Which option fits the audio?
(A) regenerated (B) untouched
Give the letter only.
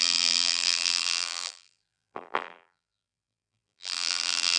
A